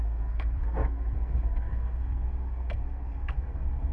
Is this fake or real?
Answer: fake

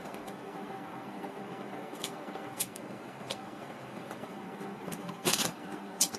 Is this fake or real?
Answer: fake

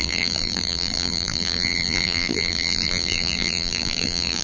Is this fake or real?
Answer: fake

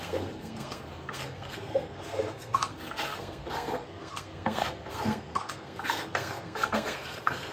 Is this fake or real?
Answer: fake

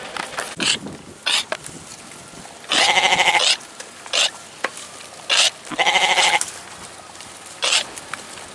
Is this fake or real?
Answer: real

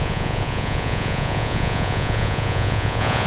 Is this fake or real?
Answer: fake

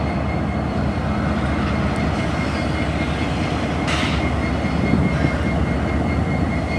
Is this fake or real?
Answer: real